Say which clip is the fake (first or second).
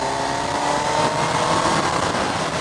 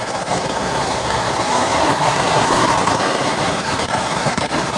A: second